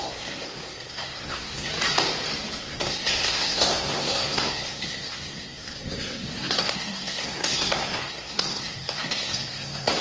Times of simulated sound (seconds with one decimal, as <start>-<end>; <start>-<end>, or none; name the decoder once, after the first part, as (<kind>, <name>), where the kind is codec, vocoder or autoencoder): 0.0-1.7 (codec, SNAC); 2.6-10.0